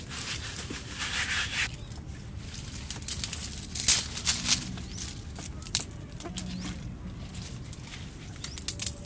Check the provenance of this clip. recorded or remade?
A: recorded